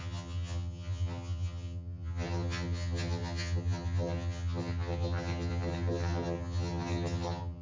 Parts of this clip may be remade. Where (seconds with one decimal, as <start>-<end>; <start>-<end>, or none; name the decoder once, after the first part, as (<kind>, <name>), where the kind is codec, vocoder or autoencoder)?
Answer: 0.0-7.6 (vocoder, HiFi-GAN)